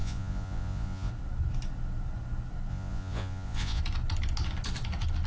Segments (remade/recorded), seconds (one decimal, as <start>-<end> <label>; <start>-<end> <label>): 0.0-1.1 remade; 1.1-2.7 recorded; 2.7-3.8 remade; 3.8-5.3 recorded